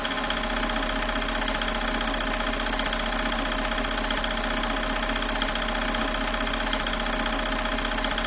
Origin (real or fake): real